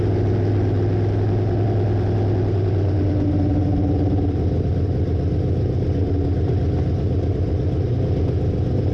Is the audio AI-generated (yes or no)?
no